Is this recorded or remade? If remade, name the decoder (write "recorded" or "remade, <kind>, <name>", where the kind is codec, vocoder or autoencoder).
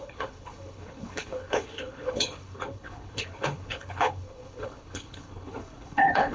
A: remade, codec, HILCodec